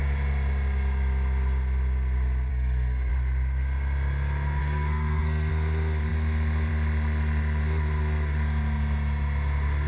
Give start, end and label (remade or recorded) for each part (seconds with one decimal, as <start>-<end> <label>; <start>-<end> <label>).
0.0-2.5 recorded; 2.5-3.1 remade; 3.1-4.6 recorded; 4.6-5.5 remade; 5.5-9.9 recorded